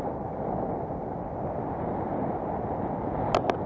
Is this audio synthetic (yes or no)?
no